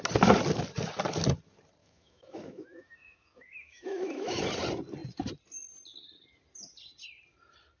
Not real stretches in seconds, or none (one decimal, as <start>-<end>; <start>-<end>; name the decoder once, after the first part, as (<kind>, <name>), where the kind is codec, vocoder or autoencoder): 1.8-4.4 (autoencoder, DAC-VAE)